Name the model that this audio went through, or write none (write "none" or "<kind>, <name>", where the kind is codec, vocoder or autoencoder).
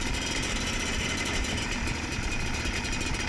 vocoder, BigVGAN v2